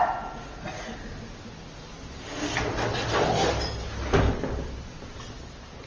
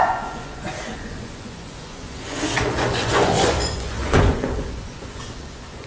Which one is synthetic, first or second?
second